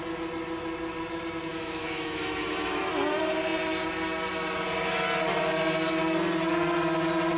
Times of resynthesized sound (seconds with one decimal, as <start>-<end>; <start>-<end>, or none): 1.5-2.8